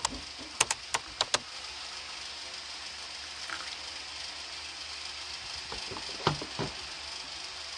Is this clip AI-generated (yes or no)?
no